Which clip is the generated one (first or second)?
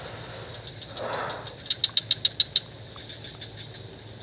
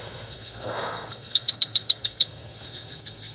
second